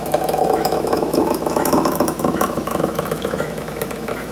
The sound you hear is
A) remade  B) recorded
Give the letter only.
A